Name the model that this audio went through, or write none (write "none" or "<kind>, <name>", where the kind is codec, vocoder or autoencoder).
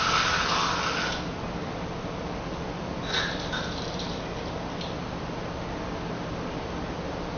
none